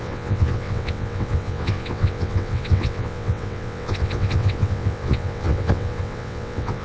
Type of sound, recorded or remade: remade